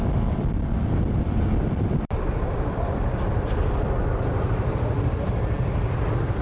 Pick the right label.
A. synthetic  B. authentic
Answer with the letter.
A